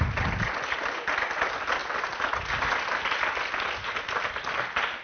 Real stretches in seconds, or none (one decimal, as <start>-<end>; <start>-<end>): 0.0-5.0